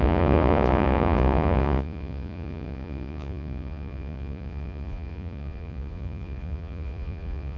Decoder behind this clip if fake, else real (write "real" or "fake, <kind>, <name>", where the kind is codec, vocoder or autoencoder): fake, vocoder, Vocos